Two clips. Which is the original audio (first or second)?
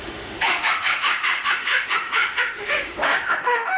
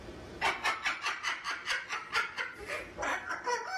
second